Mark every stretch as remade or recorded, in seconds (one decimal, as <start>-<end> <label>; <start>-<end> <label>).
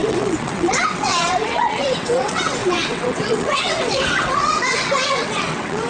0.0-5.9 remade